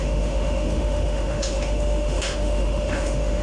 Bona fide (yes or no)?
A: no